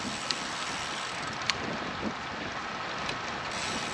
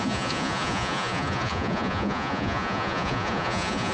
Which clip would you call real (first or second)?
first